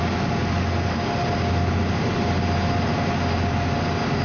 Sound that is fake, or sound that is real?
real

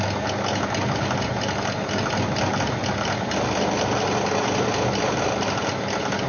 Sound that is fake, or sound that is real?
real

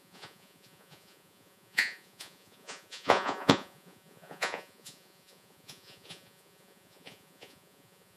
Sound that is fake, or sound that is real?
fake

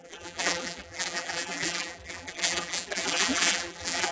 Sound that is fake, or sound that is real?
fake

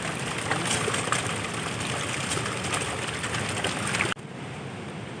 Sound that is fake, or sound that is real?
real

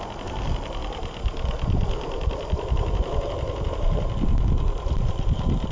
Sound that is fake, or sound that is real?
real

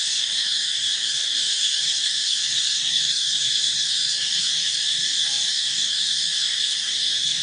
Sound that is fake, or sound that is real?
fake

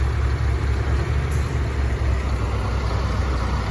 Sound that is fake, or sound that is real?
real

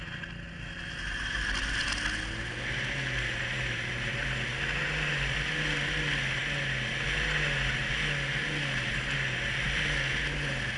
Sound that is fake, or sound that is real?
real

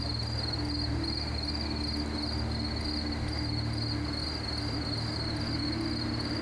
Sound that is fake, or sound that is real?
real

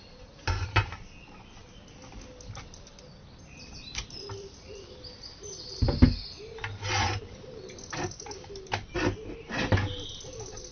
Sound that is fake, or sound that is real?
real